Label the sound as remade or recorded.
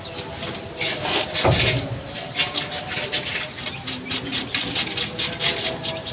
recorded